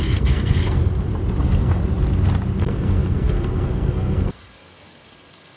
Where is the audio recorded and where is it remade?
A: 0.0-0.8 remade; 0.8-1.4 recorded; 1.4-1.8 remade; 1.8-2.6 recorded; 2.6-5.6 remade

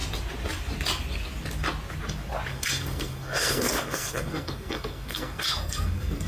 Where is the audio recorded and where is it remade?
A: 0.0-2.5 recorded; 2.5-6.3 remade

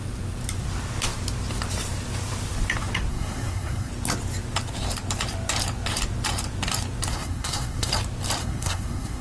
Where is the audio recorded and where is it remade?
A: 0.0-3.1 recorded; 3.1-3.9 remade; 3.9-7.1 recorded; 7.1-7.9 remade; 7.9-8.4 recorded; 8.4-9.2 remade

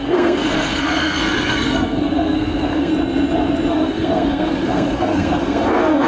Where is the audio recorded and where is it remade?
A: 0.0-2.9 remade; 2.9-3.7 recorded; 3.7-6.1 remade

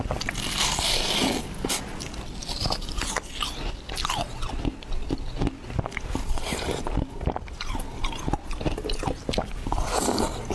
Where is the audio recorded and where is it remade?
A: 0.0-10.5 recorded

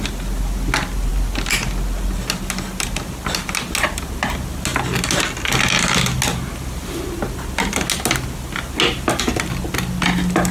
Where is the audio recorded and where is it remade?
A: 0.0-10.5 recorded

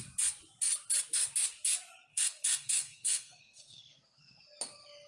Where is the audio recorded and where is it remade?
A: 0.0-2.1 recorded; 2.1-4.4 remade; 4.4-5.1 recorded